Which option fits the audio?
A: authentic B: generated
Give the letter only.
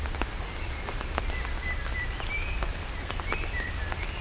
A